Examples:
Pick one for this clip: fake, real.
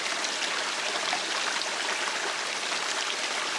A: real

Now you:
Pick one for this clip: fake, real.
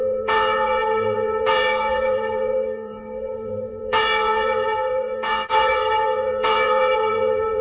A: fake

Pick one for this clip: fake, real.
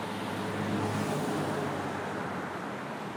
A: real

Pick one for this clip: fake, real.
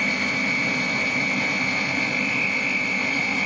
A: real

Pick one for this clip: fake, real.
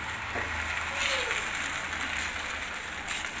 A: real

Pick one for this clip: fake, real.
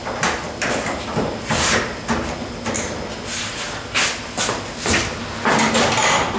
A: real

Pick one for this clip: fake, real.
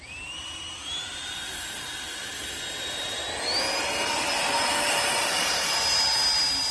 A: real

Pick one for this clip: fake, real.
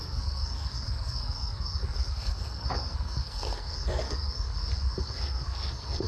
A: fake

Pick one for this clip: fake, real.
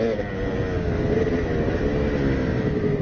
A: real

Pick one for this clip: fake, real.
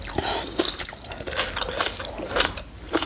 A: fake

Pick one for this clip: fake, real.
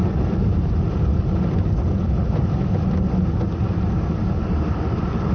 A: real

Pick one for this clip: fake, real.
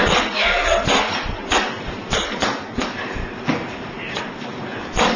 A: real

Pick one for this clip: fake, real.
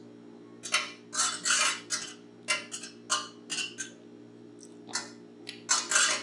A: real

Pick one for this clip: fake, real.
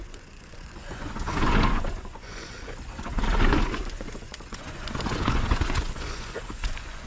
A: fake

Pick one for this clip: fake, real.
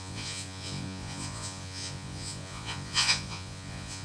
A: fake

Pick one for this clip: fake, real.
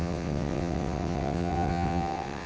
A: fake